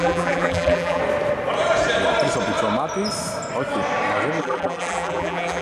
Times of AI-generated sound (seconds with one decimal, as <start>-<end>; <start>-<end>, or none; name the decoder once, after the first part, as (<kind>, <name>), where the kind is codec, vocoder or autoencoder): 0.0-1.0 (vocoder, BigVGAN v2); 4.4-5.6